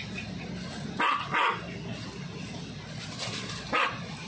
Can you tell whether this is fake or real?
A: real